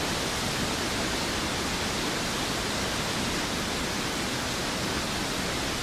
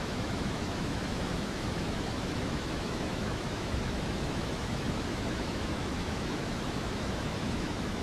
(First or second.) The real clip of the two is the first